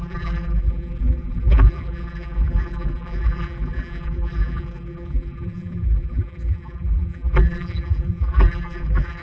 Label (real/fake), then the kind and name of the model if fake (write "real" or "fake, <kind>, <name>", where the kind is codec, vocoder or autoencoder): fake, vocoder, BigVGAN v2